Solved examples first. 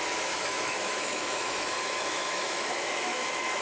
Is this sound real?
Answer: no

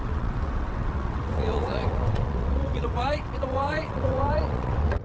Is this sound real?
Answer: no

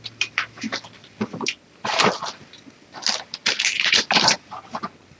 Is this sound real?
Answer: yes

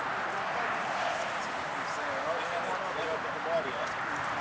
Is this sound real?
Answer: yes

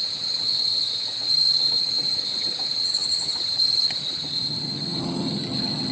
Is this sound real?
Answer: no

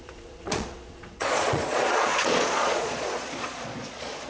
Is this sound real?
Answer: no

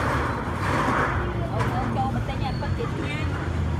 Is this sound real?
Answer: yes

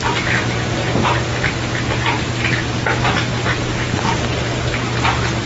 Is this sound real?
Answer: yes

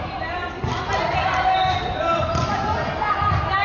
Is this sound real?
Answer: yes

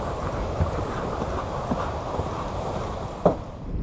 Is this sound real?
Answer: no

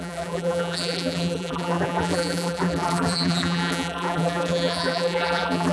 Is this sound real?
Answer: no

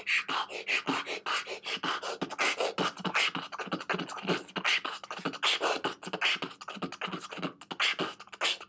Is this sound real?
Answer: yes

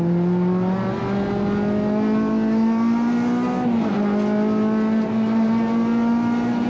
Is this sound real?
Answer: yes